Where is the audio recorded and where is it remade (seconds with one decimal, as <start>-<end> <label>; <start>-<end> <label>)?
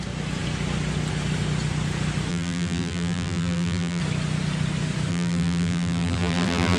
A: 0.0-2.3 recorded; 2.3-4.0 remade; 4.0-5.1 recorded; 5.1-6.8 remade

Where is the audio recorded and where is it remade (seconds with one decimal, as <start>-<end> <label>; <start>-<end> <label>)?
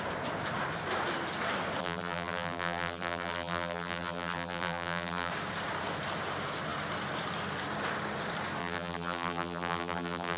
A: 0.0-1.8 recorded; 1.8-5.3 remade; 5.3-8.6 recorded; 8.6-10.4 remade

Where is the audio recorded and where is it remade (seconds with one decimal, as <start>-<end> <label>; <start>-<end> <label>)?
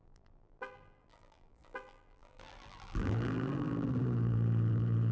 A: 0.0-5.1 remade